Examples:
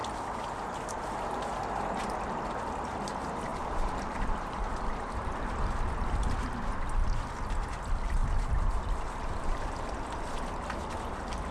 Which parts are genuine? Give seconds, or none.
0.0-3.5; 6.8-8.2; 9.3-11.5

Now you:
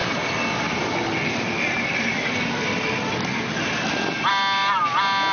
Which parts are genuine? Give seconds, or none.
0.0-5.3

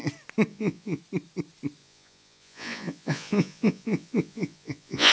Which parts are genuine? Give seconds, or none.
0.0-0.5; 1.0-1.8

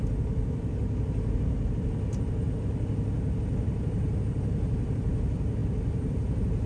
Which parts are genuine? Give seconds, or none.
0.0-6.7

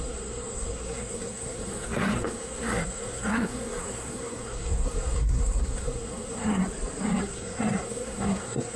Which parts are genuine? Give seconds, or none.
6.6-7.2

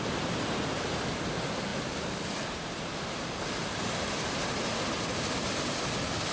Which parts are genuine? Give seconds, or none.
0.0-6.3

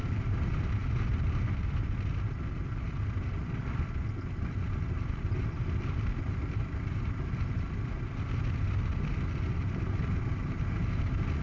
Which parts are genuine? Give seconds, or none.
0.0-11.4